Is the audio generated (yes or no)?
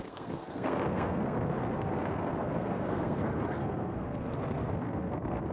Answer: yes